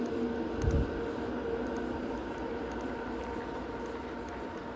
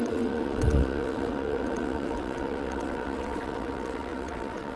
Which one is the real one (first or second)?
first